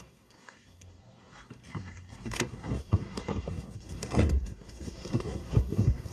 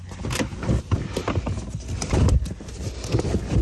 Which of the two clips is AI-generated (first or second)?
first